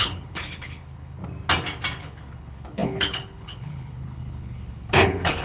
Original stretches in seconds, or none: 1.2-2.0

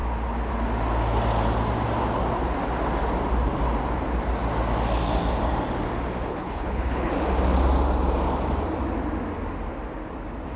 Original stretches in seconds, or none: 0.0-6.3; 7.1-10.6

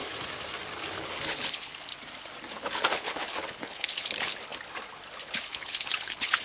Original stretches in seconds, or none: 0.0-0.9; 1.9-2.5; 4.5-5.2

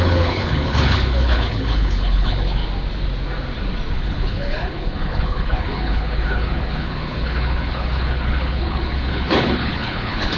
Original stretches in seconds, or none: 2.6-3.9